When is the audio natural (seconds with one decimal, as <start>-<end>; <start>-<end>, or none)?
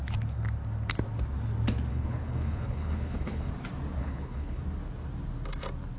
0.0-1.9; 3.5-4.0; 4.6-6.0